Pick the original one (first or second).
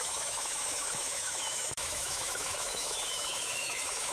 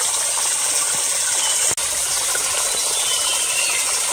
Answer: second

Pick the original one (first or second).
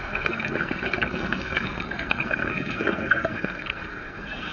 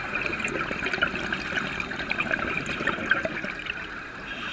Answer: second